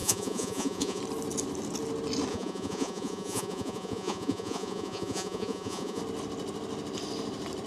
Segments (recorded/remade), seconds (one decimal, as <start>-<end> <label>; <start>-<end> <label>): 0.0-1.0 remade; 1.0-2.3 recorded; 2.3-6.0 remade; 6.0-7.7 recorded